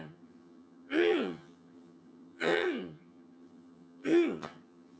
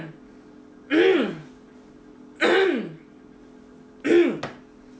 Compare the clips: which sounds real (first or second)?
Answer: second